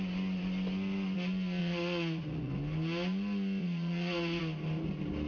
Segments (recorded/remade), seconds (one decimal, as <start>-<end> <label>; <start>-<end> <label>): 0.0-1.6 recorded; 1.6-2.5 remade; 2.5-3.6 recorded; 3.6-4.4 remade; 4.4-5.3 recorded